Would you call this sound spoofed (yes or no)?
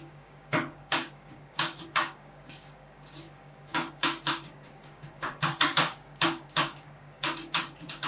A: yes